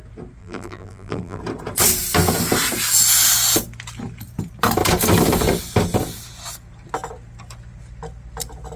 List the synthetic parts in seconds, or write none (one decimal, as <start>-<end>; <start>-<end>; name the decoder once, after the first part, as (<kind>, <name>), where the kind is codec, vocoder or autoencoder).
0.4-1.4 (vocoder, BigVGAN v2)